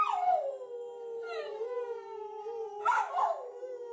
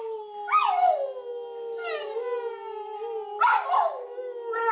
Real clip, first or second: second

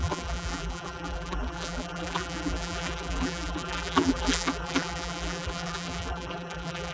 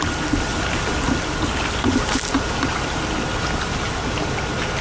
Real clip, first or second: second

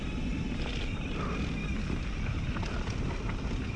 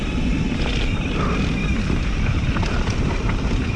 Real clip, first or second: first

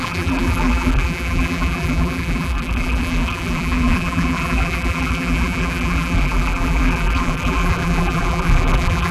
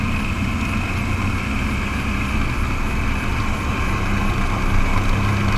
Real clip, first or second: second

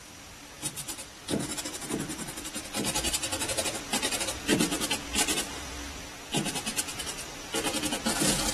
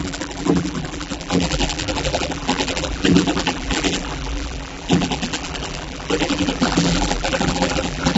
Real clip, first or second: first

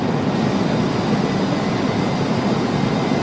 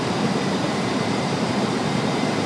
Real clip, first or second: first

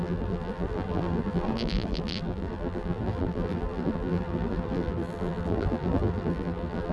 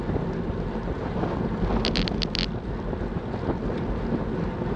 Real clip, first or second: second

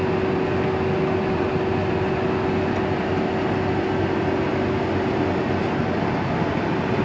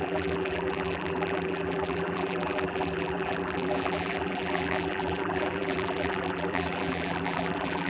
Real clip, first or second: first